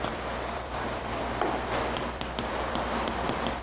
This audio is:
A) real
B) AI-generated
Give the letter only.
B